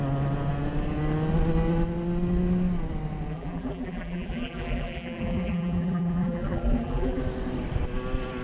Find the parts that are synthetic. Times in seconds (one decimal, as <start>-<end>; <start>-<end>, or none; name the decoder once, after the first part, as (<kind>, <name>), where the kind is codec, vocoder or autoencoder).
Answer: 3.3-7.2 (vocoder, BigVGAN v2)